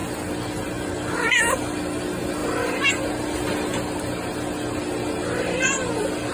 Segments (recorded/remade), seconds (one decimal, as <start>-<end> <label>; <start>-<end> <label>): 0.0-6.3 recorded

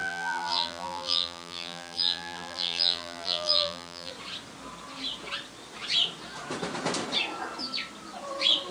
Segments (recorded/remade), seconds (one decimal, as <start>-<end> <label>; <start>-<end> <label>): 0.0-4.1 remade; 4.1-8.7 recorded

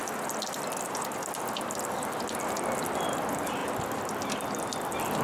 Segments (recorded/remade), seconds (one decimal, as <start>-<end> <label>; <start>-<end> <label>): 0.0-5.2 recorded

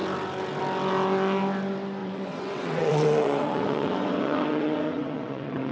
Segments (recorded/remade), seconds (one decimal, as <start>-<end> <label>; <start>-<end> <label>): 0.0-2.0 recorded; 2.0-5.7 remade